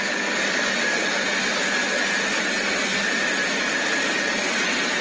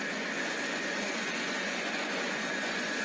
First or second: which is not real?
second